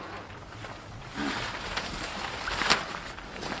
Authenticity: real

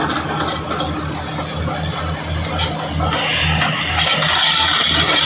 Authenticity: real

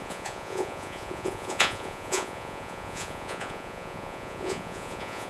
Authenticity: fake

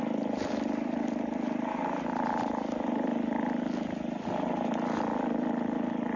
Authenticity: real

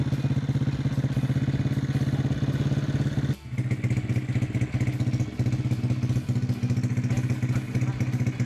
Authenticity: real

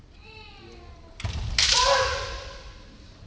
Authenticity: real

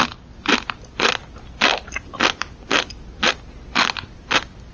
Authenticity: real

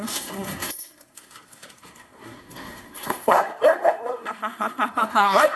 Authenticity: fake